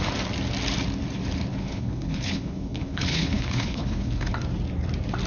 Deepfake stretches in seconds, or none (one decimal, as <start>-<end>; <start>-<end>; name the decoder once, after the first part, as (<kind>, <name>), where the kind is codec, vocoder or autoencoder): 1.5-4.3 (codec, HILCodec)